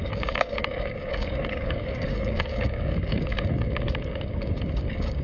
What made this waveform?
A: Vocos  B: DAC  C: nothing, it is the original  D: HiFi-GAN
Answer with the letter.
B